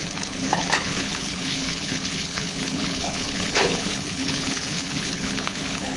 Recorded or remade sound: remade